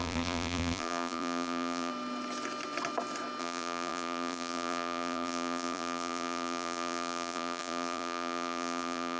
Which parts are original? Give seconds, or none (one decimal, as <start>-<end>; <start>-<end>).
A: 1.9-3.4